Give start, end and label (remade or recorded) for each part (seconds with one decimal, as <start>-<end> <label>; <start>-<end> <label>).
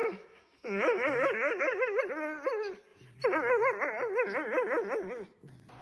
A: 0.0-2.0 remade; 2.0-5.8 recorded